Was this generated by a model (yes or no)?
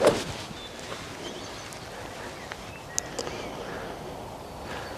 no